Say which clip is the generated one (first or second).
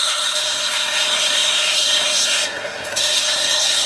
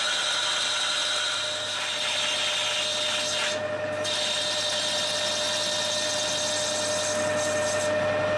first